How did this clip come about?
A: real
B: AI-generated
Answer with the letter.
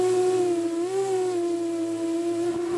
A